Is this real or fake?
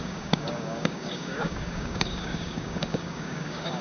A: fake